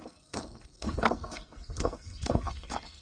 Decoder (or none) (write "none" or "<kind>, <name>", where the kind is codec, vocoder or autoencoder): codec, SNAC